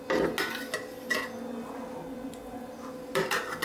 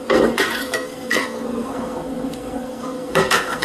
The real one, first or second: first